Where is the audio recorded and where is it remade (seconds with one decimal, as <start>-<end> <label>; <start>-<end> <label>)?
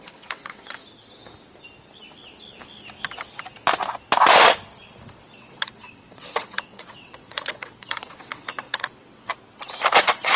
0.0-0.8 remade; 0.8-5.4 recorded; 5.4-9.3 remade; 9.3-10.0 recorded; 10.0-10.4 remade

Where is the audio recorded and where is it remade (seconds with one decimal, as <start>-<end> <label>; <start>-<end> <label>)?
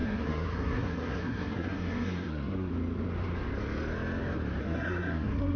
0.0-2.7 remade; 2.7-4.6 recorded; 4.6-5.6 remade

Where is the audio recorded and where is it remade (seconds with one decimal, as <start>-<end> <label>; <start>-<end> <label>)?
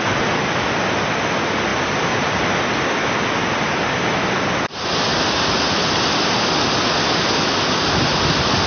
0.0-1.7 recorded; 1.7-2.6 remade; 2.6-5.1 recorded; 5.1-6.4 remade; 6.4-8.7 recorded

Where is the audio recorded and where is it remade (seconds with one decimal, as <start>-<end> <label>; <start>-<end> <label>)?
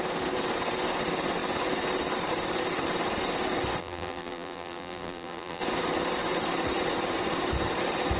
0.0-3.8 recorded; 3.8-5.6 remade; 5.6-8.2 recorded